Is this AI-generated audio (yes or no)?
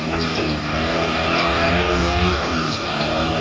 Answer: yes